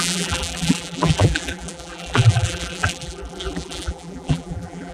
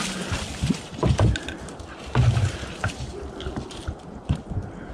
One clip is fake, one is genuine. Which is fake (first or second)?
first